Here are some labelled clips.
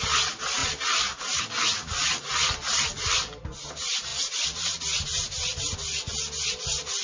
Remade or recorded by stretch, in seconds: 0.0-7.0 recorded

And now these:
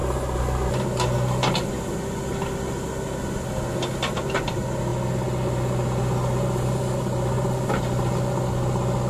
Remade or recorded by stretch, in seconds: 0.0-9.1 recorded